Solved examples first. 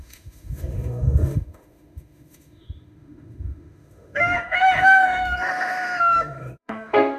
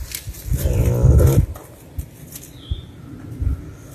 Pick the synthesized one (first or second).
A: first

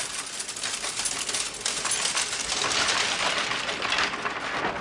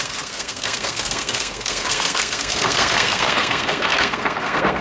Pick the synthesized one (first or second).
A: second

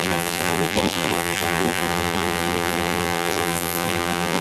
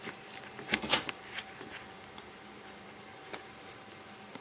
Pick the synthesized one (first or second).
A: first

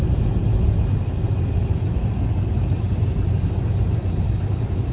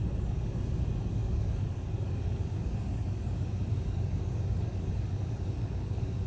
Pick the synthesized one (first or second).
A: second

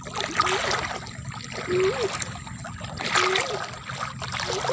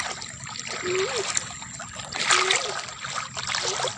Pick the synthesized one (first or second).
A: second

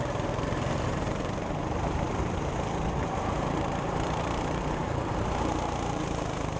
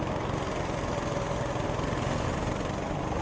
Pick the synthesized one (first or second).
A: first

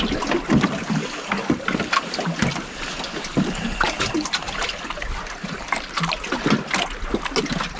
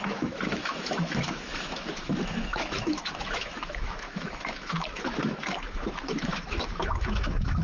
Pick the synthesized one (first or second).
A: second